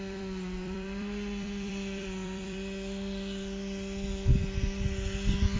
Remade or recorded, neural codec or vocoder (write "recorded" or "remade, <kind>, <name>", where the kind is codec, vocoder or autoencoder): remade, vocoder, BigVGAN v2